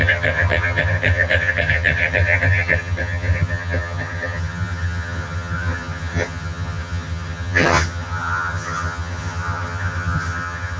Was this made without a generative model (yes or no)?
no